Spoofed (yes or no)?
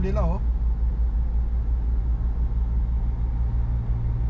no